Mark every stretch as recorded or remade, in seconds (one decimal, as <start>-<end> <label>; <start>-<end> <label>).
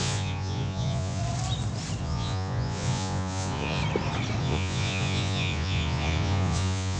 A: 0.0-1.2 remade; 1.2-2.0 recorded; 2.0-3.8 remade; 3.8-4.4 recorded; 4.4-7.0 remade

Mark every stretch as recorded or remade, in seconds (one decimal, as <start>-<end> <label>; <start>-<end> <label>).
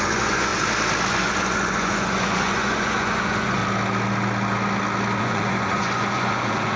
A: 0.0-0.5 remade; 0.5-1.1 recorded; 1.1-3.6 remade; 3.6-5.2 recorded; 5.2-6.8 remade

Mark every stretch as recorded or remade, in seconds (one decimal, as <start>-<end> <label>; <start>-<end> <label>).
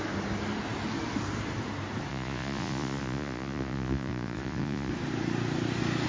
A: 0.0-2.1 recorded; 2.1-4.9 remade; 4.9-6.1 recorded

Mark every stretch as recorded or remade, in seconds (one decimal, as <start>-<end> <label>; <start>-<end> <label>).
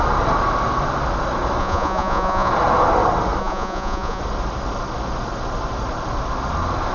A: 0.0-1.6 recorded; 1.6-2.5 remade; 2.5-3.4 recorded; 3.4-4.2 remade; 4.2-6.9 recorded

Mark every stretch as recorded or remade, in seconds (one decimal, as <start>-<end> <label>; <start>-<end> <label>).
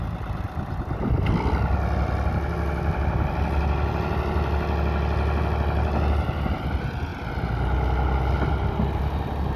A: 0.0-9.6 recorded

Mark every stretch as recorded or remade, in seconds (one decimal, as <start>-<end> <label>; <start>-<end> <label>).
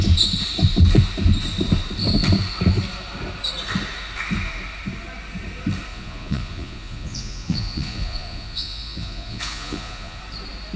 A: 0.0-5.9 recorded; 5.9-10.2 remade; 10.2-10.8 recorded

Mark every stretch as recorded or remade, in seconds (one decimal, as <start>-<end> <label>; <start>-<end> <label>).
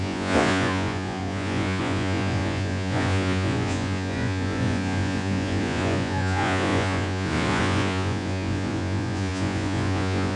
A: 0.0-10.4 remade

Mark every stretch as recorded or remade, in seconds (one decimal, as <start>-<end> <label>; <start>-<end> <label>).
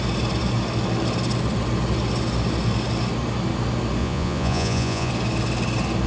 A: 0.0-4.0 recorded; 4.0-5.1 remade; 5.1-6.1 recorded